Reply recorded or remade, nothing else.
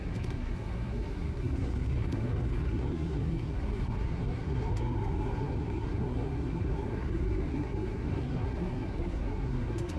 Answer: remade